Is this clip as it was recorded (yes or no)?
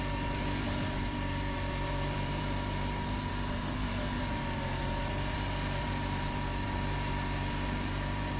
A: no